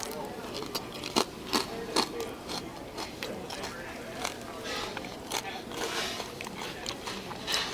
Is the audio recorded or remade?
remade